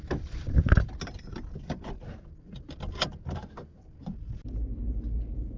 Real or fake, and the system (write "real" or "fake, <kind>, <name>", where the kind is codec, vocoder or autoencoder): real